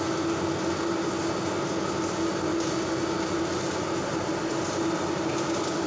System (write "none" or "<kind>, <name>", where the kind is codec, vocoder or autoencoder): none